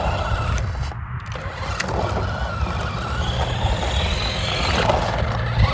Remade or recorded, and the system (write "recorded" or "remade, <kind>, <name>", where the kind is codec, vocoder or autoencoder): recorded